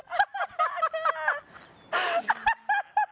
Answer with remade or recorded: recorded